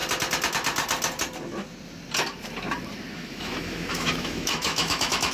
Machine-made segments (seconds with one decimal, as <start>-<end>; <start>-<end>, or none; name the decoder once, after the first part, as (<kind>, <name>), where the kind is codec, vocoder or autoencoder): 3.1-5.3 (autoencoder, DAC-VAE)